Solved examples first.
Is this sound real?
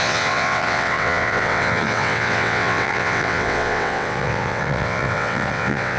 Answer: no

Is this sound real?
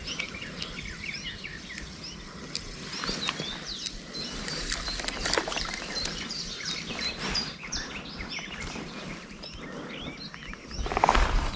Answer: yes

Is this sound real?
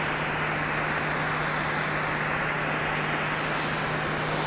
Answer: yes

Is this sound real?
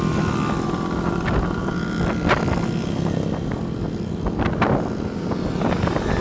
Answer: yes